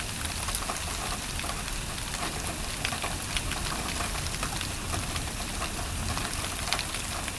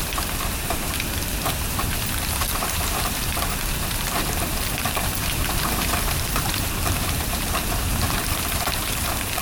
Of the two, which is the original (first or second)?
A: first